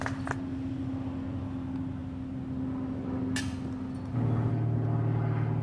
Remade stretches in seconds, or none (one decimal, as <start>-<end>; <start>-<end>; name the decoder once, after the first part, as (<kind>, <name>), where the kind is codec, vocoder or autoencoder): none